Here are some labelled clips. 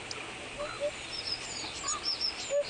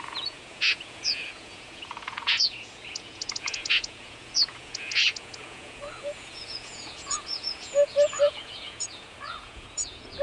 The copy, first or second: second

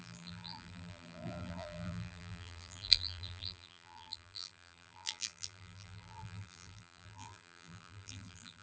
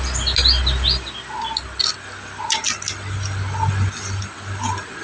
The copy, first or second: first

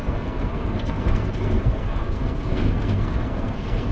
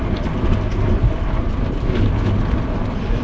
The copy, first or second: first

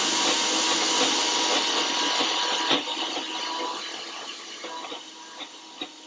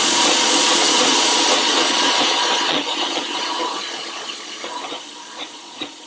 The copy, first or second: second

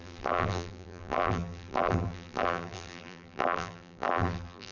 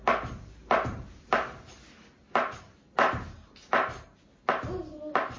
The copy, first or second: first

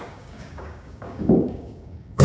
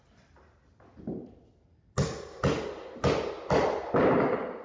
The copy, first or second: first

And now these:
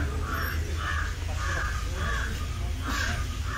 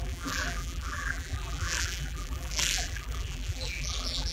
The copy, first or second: second